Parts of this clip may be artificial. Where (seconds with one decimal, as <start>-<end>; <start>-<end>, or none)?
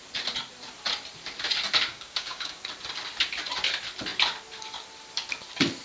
1.9-2.6